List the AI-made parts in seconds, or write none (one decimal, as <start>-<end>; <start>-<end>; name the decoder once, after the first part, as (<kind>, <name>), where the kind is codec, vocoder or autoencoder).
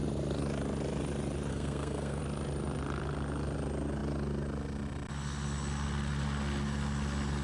1.5-2.2 (codec, SNAC)